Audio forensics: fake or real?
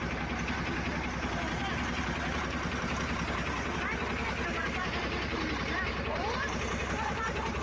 fake